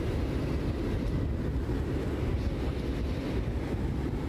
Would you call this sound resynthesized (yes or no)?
no